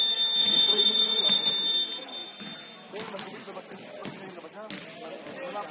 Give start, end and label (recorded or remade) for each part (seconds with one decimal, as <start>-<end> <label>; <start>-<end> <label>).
0.0-0.4 recorded; 0.4-1.5 remade; 1.5-5.7 recorded

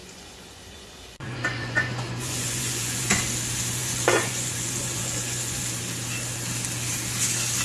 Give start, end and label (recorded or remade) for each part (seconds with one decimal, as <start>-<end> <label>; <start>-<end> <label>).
0.0-3.2 remade; 3.2-3.8 recorded; 3.8-5.6 remade; 5.6-7.6 recorded

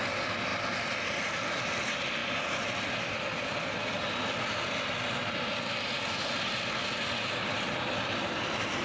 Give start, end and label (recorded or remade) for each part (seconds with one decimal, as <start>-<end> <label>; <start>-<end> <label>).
0.0-8.8 recorded

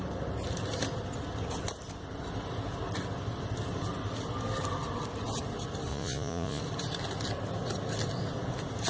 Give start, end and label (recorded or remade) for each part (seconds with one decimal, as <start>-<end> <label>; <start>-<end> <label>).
0.0-5.9 recorded; 5.9-6.6 remade; 6.6-8.9 recorded

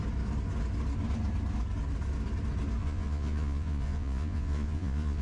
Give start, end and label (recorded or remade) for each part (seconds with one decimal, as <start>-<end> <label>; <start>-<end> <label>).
0.0-2.8 recorded; 2.8-5.2 remade

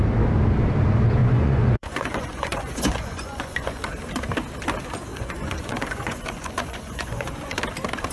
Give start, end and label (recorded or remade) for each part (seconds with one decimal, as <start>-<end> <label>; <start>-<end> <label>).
0.0-1.2 recorded; 1.2-3.8 remade; 3.8-5.1 recorded; 5.1-7.6 remade; 7.6-8.1 recorded

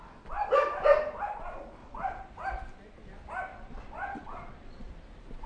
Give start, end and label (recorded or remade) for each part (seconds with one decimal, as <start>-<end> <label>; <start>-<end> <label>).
0.0-1.8 recorded; 1.8-2.3 remade; 2.3-3.5 recorded; 3.5-4.9 remade; 4.9-5.5 recorded